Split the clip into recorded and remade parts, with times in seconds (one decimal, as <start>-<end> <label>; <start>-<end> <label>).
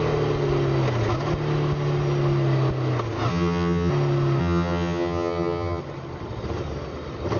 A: 0.0-3.3 recorded; 3.3-3.9 remade; 3.9-4.4 recorded; 4.4-5.8 remade; 5.8-7.4 recorded